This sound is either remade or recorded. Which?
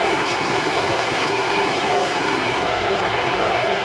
remade